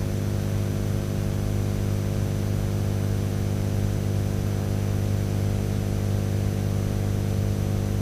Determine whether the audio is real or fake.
real